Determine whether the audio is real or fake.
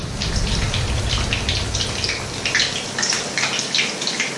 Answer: real